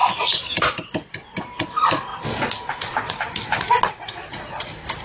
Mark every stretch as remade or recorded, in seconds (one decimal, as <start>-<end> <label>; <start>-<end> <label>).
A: 0.0-0.9 remade; 0.9-5.0 recorded